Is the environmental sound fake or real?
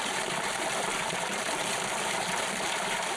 fake